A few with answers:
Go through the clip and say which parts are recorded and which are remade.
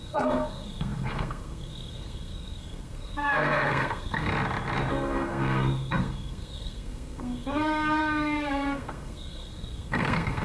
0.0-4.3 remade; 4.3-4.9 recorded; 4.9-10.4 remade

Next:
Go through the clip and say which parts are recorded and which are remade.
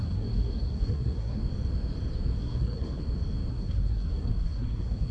0.0-1.4 remade; 1.4-2.4 recorded; 2.4-3.0 remade; 3.0-3.5 recorded; 3.5-5.1 remade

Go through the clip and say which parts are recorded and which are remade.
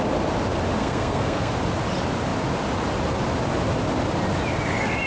0.0-0.8 recorded; 0.8-1.5 remade; 1.5-5.1 recorded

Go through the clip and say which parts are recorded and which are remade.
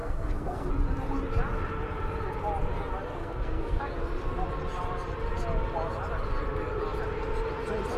0.0-0.7 remade; 0.7-3.2 recorded; 3.2-3.8 remade; 3.8-8.0 recorded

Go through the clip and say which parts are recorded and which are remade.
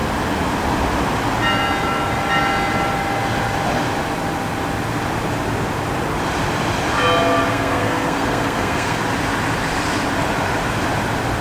0.0-7.5 recorded; 7.5-9.0 remade; 9.0-11.4 recorded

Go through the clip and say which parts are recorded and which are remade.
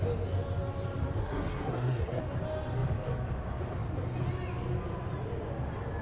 0.0-1.2 recorded; 1.2-2.2 remade; 2.2-6.0 recorded